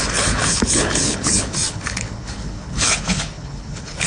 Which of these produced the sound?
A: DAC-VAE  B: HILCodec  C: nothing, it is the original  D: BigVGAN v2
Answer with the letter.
B